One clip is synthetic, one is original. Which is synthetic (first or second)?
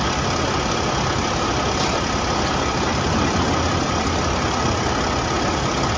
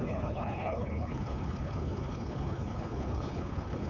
second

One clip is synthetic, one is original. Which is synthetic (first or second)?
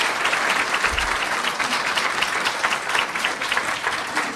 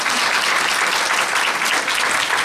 first